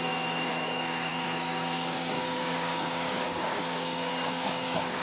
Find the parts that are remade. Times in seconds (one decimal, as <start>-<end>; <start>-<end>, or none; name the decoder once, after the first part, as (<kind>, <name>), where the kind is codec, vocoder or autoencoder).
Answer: 0.0-5.0 (codec, DAC)

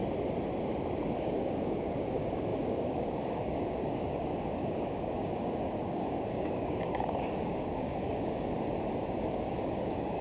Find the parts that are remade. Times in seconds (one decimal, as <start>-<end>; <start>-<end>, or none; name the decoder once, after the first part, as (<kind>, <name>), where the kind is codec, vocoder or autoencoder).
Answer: 1.2-8.5 (codec, DAC); 9.3-10.2

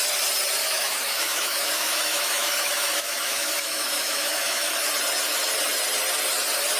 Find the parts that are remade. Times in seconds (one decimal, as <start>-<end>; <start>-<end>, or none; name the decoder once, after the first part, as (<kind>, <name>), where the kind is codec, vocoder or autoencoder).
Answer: 0.6-4.7 (autoencoder, DAC-VAE)

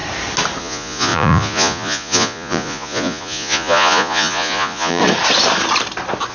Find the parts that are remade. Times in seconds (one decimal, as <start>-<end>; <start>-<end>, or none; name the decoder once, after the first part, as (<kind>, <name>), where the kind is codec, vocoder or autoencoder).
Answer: 0.6-5.0 (vocoder, Vocos)